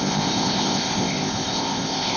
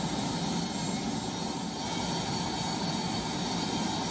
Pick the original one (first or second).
second